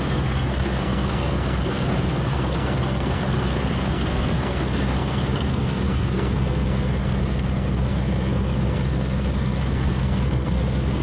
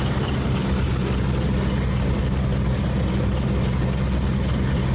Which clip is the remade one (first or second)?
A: first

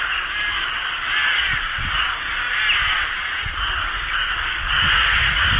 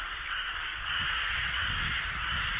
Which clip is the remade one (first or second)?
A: second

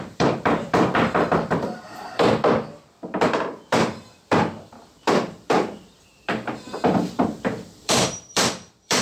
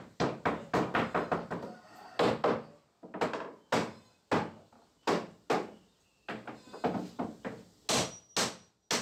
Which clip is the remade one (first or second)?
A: first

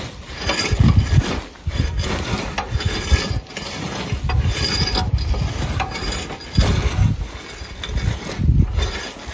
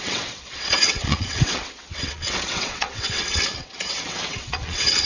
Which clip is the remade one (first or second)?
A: second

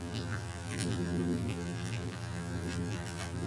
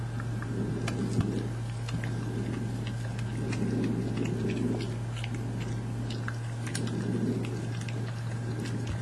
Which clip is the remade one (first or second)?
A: first